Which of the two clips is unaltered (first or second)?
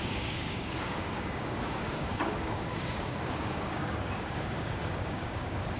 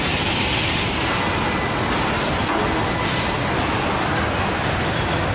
second